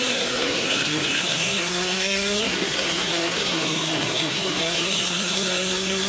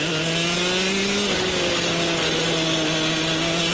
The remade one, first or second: first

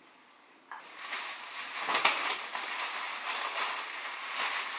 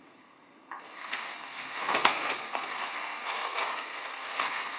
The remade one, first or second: second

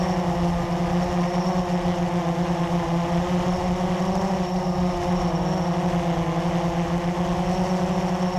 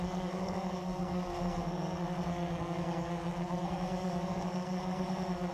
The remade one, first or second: second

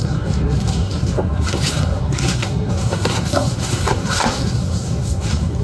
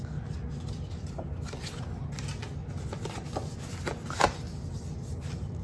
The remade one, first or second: first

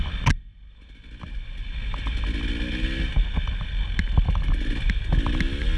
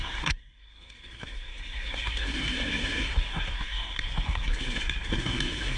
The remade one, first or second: second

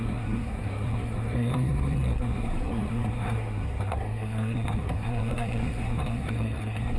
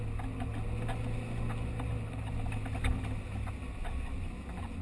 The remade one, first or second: first